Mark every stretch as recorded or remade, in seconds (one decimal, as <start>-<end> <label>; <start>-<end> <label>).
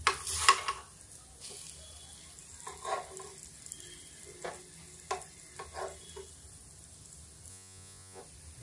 0.0-7.5 recorded; 7.5-8.2 remade; 8.2-8.6 recorded